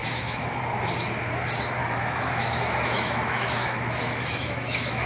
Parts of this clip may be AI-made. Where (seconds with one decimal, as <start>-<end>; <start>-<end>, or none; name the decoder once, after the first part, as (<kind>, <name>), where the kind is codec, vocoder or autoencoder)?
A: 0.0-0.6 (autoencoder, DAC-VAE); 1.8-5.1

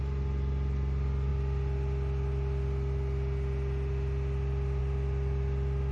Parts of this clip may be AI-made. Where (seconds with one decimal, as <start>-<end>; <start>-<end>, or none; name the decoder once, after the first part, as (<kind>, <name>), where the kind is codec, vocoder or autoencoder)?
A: none

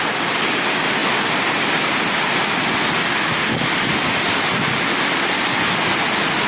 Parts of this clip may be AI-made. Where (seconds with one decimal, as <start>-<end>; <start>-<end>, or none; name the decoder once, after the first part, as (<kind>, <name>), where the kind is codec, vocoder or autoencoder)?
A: 3.1-3.7 (autoencoder, DAC-VAE)

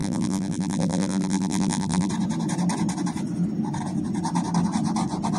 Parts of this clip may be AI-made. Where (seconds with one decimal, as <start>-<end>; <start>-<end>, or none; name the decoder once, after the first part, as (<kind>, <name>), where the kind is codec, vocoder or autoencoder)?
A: 0.0-2.1 (vocoder, BigVGAN v2)